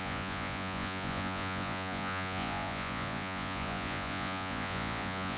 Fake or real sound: fake